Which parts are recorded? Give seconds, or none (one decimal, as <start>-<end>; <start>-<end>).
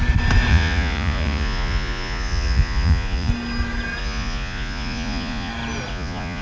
0.0-0.5; 3.3-4.0; 5.5-5.9